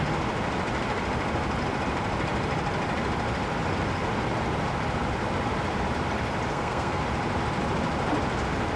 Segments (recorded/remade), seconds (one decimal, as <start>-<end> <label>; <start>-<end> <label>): 0.0-6.5 recorded; 6.5-7.0 remade; 7.0-8.8 recorded

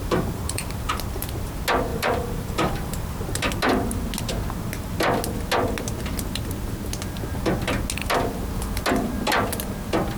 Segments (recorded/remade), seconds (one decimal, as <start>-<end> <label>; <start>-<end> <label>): 0.0-0.9 remade; 0.9-1.9 recorded; 1.9-3.1 remade; 3.1-10.2 recorded

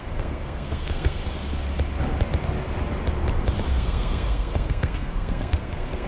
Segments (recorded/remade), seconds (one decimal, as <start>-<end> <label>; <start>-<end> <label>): 0.0-1.2 remade; 1.2-3.7 recorded; 3.7-6.1 remade

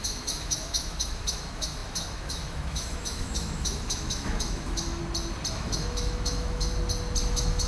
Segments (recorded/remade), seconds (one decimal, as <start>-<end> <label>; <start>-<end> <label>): 0.0-5.0 remade; 5.0-5.5 recorded; 5.5-6.7 remade; 6.7-7.3 recorded; 7.3-7.7 remade